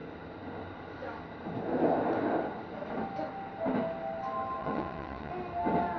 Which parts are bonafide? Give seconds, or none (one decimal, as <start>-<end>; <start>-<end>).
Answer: 0.0-4.6; 5.3-6.0